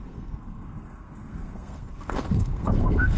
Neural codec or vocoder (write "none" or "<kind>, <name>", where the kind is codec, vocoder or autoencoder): codec, SNAC